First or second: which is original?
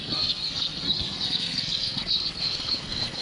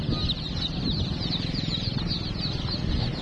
second